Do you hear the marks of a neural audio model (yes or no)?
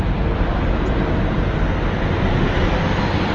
no